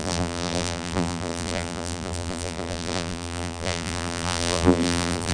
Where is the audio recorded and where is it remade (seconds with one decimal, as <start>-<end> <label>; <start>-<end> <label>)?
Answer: 0.0-5.3 remade